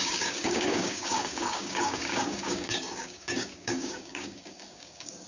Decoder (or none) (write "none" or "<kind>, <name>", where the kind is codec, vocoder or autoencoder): codec, DAC